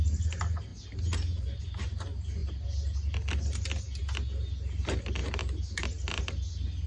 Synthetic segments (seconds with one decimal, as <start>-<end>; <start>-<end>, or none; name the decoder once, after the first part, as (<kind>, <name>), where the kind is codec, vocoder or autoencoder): none